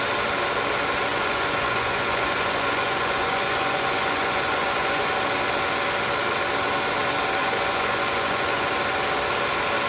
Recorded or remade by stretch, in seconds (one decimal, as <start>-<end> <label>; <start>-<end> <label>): 0.0-1.1 recorded; 1.1-5.1 remade; 5.1-7.4 recorded; 7.4-8.7 remade; 8.7-9.9 recorded